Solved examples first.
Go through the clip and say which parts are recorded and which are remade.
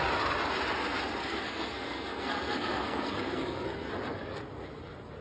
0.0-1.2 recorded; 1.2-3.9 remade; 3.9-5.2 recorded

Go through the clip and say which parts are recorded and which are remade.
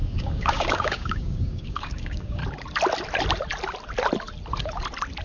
0.0-2.4 remade; 2.4-5.2 recorded